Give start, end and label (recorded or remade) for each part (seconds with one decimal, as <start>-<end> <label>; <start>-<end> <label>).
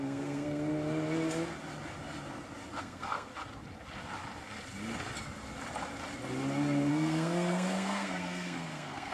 0.0-0.7 remade; 0.7-2.8 recorded; 2.8-3.3 remade; 3.3-6.9 recorded; 6.9-9.1 remade